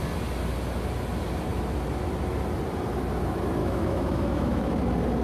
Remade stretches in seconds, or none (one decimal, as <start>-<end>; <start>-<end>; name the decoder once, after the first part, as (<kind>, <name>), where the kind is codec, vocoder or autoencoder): 3.6-4.7 (autoencoder, DAC-VAE)